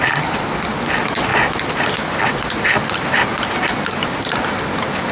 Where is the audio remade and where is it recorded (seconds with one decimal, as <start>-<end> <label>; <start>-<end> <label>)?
0.0-5.1 recorded